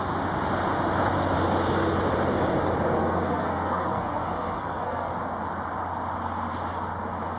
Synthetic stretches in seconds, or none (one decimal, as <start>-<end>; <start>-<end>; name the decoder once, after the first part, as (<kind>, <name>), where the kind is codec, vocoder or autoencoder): 3.0-5.1 (codec, SNAC)